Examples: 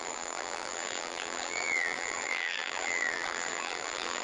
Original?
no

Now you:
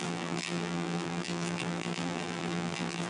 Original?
no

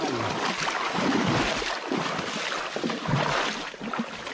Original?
yes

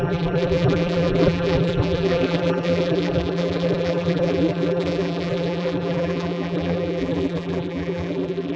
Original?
no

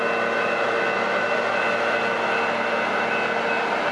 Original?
yes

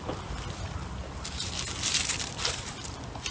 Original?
yes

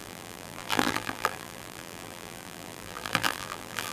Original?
no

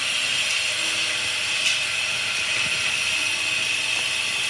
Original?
yes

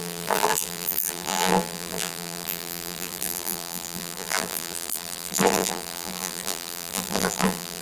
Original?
no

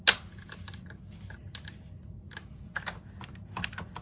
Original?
yes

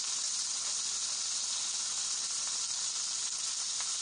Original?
yes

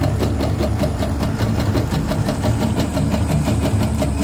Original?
no